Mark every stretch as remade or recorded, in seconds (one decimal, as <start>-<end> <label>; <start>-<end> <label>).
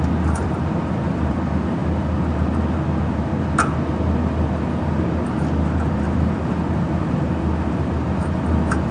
0.0-1.8 remade; 1.8-5.9 recorded; 5.9-8.9 remade